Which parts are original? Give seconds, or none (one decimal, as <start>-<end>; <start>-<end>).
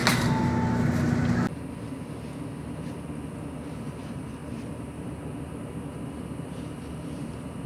0.0-3.7